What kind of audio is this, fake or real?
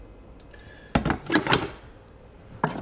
real